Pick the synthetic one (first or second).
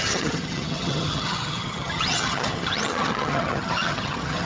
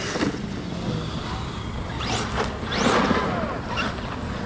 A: first